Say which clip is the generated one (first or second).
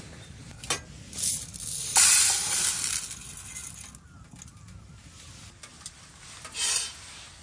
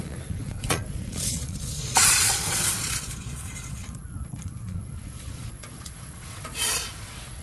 second